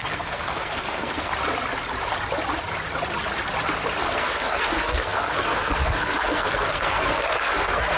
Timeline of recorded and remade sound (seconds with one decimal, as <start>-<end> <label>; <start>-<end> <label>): 0.0-1.3 remade; 1.3-4.0 recorded; 4.0-8.0 remade